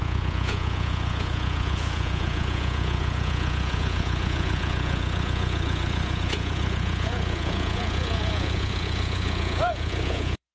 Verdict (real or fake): fake